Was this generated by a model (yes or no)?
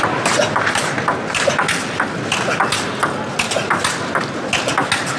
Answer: no